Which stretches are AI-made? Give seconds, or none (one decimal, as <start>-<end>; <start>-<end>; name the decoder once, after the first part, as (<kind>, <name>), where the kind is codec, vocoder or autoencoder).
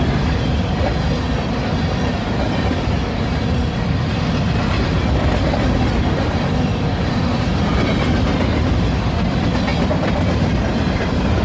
6.7-7.8 (vocoder, BigVGAN v2)